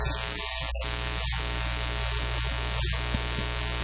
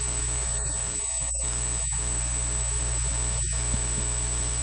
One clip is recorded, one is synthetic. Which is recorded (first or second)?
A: first